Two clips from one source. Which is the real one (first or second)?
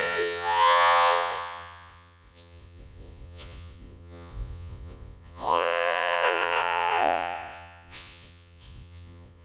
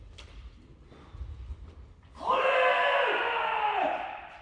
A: second